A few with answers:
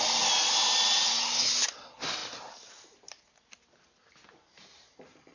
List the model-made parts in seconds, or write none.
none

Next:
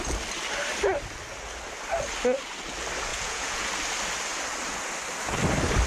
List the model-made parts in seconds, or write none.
3.1-3.7 (vocoder, Vocos)